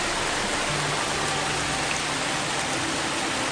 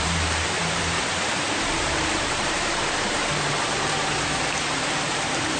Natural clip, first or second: first